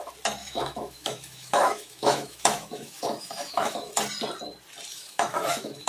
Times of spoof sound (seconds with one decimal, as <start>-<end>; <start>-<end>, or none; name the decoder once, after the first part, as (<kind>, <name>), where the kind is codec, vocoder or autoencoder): 0.4-3.9 (autoencoder, DAC-VAE); 4.9-5.9